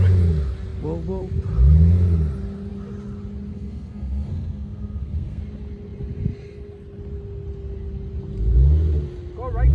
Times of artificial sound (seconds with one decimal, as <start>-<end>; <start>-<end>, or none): 3.5-5.4